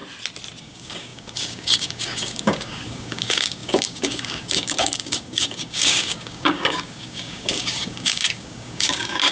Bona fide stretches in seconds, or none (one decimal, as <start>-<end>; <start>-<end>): 0.0-0.6